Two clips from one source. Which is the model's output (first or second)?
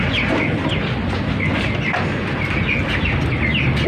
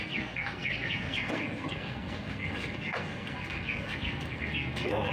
second